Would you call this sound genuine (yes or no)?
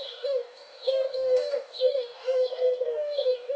no